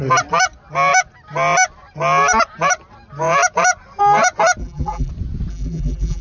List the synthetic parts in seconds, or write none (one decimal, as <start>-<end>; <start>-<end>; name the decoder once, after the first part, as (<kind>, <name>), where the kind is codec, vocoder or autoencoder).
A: 4.6-5.1 (vocoder, BigVGAN v2); 5.5-6.2